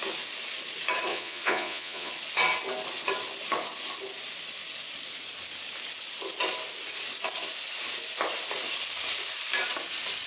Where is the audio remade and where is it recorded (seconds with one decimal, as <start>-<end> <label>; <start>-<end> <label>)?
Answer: 0.0-1.1 recorded; 1.1-2.1 remade; 2.1-10.3 recorded